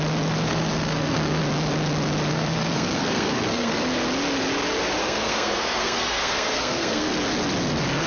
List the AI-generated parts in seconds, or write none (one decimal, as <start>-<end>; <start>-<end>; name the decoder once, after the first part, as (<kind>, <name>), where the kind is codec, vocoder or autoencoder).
0.5-1.4 (codec, SNAC); 2.3-3.8; 5.0-7.1